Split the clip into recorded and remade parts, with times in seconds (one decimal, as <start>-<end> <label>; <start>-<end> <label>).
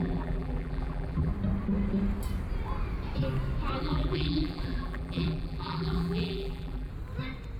0.0-1.3 remade; 1.3-3.8 recorded; 3.8-6.9 remade; 6.9-7.6 recorded